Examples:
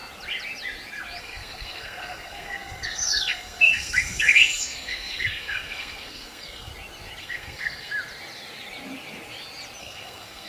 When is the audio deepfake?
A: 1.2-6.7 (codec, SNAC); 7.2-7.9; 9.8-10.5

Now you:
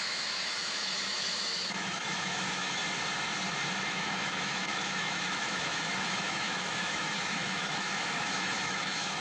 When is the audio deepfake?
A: 0.0-2.8 (autoencoder, DAC-VAE); 3.9-9.2